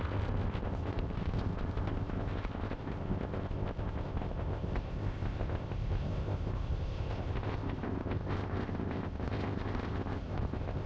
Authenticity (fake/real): fake